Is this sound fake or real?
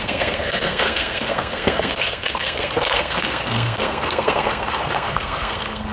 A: fake